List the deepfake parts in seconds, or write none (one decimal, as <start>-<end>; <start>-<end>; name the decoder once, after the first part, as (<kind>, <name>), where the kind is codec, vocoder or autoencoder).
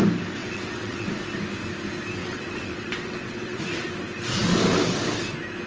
0.4-1.1 (vocoder, WaveNeXt); 2.2-3.6